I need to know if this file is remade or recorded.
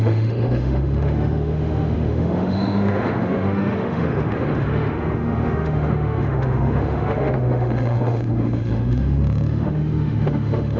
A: remade